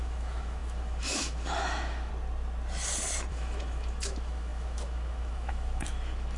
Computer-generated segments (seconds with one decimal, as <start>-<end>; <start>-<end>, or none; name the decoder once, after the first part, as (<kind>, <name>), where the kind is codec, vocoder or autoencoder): 0.0-2.1 (autoencoder, DAC-VAE); 3.3-6.4